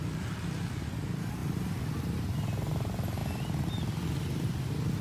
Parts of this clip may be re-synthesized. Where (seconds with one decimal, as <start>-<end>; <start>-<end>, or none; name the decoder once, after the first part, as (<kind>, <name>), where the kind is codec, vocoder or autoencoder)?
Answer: 3.2-4.0 (vocoder, BigVGAN v2)